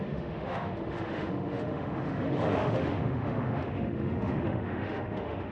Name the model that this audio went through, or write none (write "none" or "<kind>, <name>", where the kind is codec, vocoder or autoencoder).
autoencoder, DAC-VAE